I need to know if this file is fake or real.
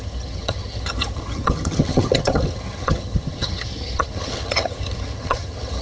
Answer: fake